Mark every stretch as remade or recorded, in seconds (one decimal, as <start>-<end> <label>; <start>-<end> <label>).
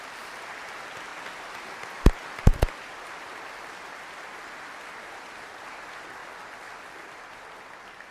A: 0.0-1.1 recorded; 1.1-1.9 remade; 1.9-8.1 recorded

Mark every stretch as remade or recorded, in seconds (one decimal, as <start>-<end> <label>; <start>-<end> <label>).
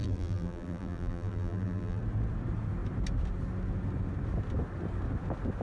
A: 0.0-2.0 remade; 2.0-5.6 recorded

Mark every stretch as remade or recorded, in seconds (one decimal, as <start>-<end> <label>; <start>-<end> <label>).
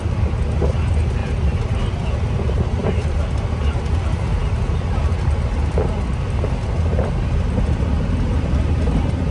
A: 0.0-1.2 recorded; 1.2-1.8 remade; 1.8-2.8 recorded; 2.8-3.8 remade; 3.8-9.3 recorded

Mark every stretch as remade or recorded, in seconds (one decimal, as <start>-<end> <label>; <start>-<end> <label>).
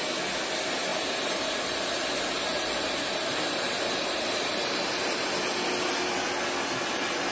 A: 0.0-0.9 recorded; 0.9-5.3 remade; 5.3-7.3 recorded